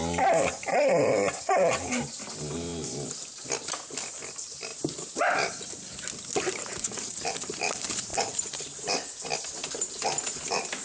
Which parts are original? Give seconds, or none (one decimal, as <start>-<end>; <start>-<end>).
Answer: 2.7-3.4